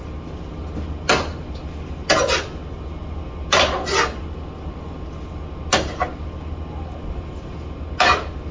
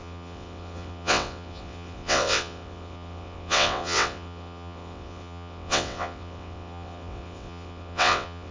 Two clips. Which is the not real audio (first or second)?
second